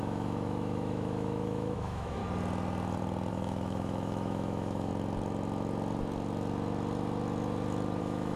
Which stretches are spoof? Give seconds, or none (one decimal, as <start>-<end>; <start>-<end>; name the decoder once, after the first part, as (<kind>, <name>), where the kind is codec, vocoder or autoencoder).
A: 0.0-2.2 (autoencoder, DAC-VAE); 3.3-4.9; 8.0-8.4